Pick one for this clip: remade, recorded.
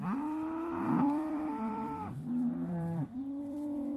remade